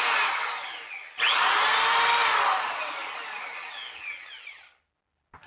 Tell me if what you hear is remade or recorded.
recorded